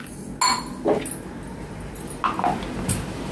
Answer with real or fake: real